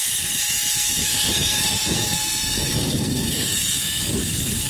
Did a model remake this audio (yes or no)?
yes